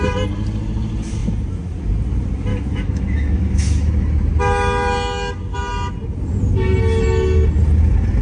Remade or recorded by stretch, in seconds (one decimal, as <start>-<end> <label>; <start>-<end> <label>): 0.0-2.5 recorded; 2.5-3.9 remade; 3.9-8.2 recorded